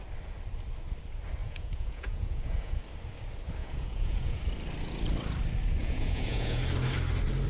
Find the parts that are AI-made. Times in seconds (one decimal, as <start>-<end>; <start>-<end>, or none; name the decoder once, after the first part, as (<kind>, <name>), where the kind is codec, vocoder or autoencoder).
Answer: 1.4-2.8 (vocoder, Vocos); 3.6-4.4; 5.8-6.6